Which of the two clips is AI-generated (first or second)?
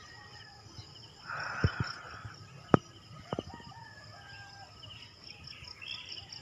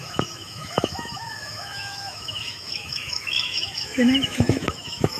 second